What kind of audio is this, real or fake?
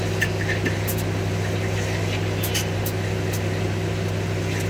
real